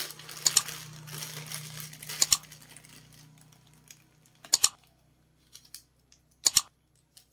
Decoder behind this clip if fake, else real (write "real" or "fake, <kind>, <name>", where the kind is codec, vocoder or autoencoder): real